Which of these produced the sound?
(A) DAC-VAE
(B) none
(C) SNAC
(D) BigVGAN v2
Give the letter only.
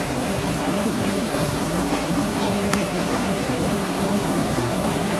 C